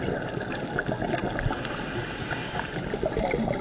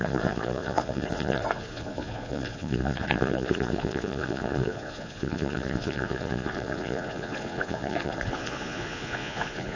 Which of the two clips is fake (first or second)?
second